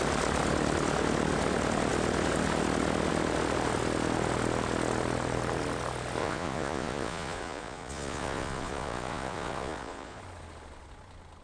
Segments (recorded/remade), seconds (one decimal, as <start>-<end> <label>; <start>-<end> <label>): 0.0-6.2 recorded; 6.2-10.2 remade; 10.2-11.4 recorded